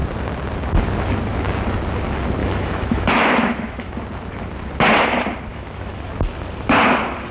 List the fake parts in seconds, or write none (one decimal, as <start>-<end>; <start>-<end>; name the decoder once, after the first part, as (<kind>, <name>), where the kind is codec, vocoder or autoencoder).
2.4-3.9 (autoencoder, DAC-VAE); 5.5-6.1